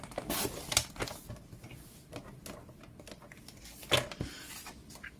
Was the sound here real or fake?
real